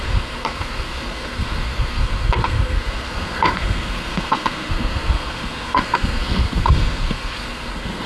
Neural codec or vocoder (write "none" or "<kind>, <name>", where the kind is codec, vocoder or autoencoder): codec, SNAC